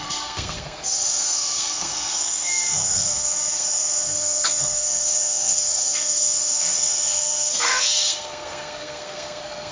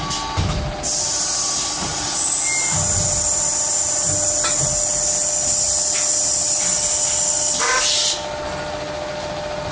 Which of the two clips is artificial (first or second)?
first